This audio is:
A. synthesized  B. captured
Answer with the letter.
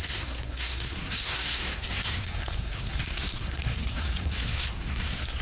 A